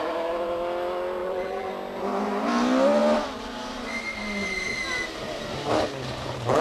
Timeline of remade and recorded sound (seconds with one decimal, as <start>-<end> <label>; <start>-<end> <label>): 0.0-1.2 recorded; 1.2-1.7 remade; 1.7-6.6 recorded